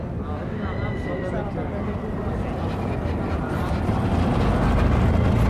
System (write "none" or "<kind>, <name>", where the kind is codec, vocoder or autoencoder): none